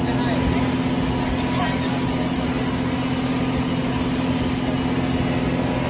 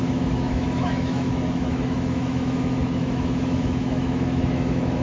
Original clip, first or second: first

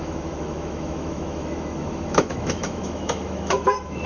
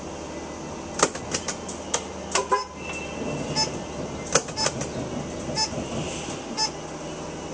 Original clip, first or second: second